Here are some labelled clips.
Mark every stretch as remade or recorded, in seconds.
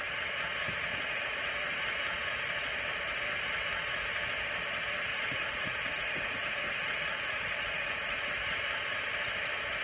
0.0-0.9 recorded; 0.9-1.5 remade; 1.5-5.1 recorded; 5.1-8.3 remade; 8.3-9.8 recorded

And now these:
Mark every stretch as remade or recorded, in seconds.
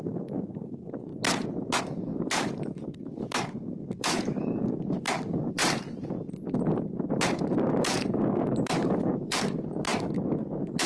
0.0-1.1 remade; 1.1-1.8 recorded; 1.8-5.6 remade; 5.6-7.7 recorded; 7.7-10.9 remade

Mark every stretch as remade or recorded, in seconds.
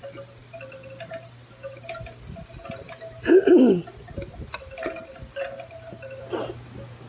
0.0-7.1 recorded